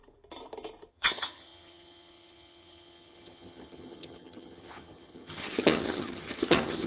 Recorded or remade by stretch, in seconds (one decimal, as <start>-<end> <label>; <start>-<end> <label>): 0.0-0.9 recorded; 0.9-6.9 remade